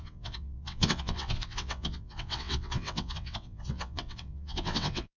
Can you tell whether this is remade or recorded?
remade